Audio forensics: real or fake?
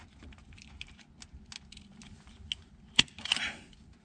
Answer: real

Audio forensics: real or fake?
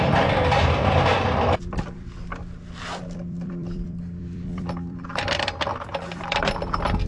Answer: fake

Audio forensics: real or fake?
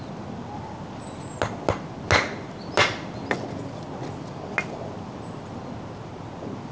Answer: real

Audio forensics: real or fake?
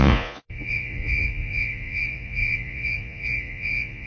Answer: fake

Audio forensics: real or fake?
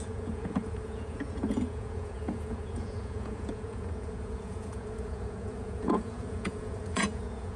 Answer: fake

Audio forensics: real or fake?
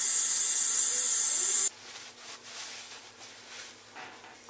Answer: real